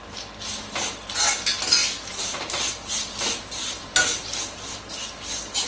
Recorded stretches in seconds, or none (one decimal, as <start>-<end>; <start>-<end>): 0.0-1.8; 5.2-5.7